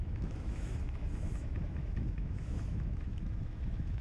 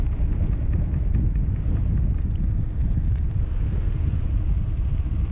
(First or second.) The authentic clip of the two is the second